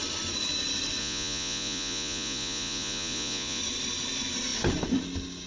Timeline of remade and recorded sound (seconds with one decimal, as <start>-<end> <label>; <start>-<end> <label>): 0.0-1.0 recorded; 1.0-3.6 remade; 3.6-5.5 recorded